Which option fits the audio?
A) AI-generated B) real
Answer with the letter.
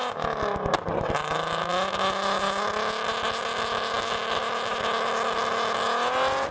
B